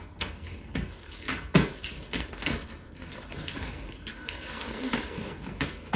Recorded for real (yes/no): no